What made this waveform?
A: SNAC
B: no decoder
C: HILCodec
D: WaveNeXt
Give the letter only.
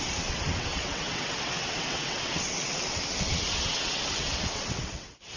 D